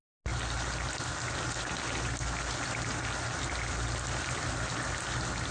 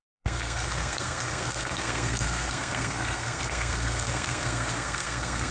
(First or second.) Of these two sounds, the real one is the first